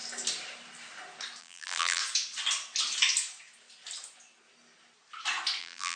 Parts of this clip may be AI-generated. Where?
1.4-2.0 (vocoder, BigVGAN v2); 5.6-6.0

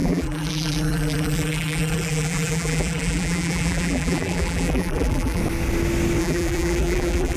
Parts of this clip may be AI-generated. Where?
0.0-5.4 (vocoder, BigVGAN v2); 6.2-7.4

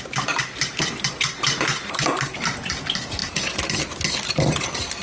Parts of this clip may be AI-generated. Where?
none

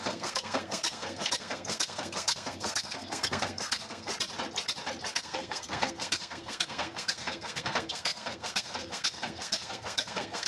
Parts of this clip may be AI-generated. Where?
0.0-4.1 (codec, SNAC); 5.1-10.5

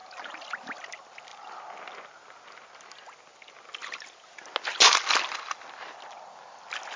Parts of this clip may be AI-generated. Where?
none

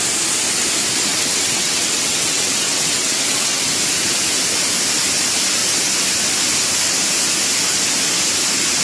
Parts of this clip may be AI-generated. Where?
1.1-3.6 (vocoder, WaveNeXt)

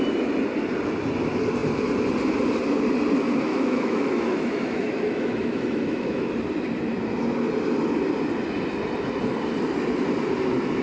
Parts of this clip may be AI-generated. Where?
3.5-6.3 (autoencoder, DAC-VAE)

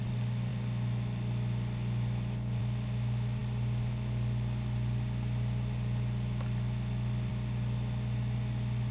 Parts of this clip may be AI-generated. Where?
none